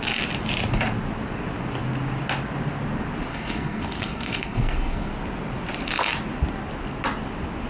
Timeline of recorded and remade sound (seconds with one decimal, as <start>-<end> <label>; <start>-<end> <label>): 0.0-3.3 recorded; 3.3-5.1 remade; 5.1-7.7 recorded